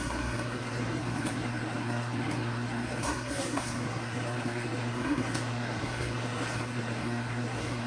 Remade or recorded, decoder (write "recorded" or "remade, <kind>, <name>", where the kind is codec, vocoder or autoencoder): remade, codec, SNAC